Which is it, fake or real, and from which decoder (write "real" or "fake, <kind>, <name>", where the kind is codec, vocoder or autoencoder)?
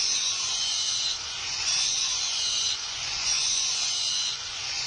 fake, vocoder, Vocos